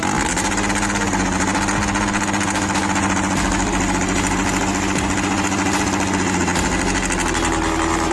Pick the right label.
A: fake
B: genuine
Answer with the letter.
B